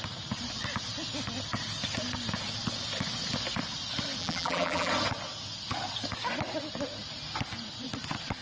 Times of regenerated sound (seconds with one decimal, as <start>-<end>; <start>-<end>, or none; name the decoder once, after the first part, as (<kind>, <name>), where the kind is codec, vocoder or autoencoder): 4.2-4.9 (vocoder, BigVGAN v2)